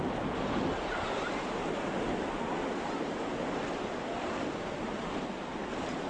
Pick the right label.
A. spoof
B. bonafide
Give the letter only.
B